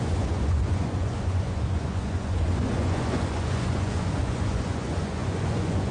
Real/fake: fake